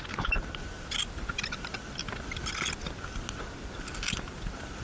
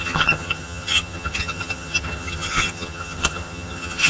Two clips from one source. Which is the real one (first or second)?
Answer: first